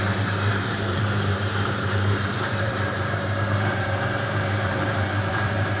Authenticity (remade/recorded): remade